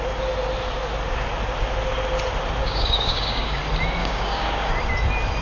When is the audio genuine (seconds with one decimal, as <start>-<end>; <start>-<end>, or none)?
0.0-2.6; 3.6-4.0; 4.7-5.4